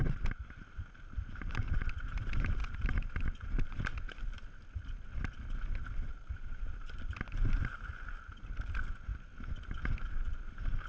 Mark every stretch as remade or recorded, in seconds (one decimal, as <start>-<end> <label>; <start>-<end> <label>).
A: 0.0-2.6 remade; 2.6-5.9 recorded; 5.9-9.1 remade; 9.1-10.1 recorded; 10.1-10.9 remade